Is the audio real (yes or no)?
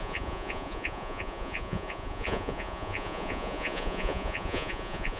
no